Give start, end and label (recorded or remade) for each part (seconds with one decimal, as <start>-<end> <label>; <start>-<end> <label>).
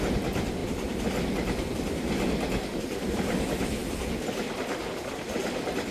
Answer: 0.0-0.6 recorded; 0.6-2.1 remade; 2.1-5.9 recorded